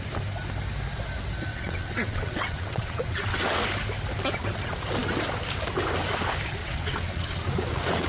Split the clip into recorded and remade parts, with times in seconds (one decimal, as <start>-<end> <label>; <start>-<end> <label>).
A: 0.0-1.5 recorded; 1.5-3.6 remade; 3.6-6.6 recorded; 6.6-8.1 remade